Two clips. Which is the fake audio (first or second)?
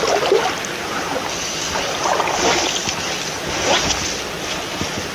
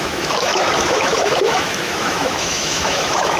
second